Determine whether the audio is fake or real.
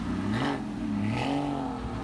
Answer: real